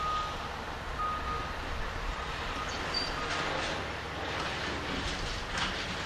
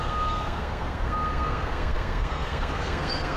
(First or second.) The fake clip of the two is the second